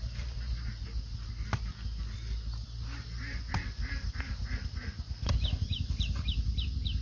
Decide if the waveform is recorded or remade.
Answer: recorded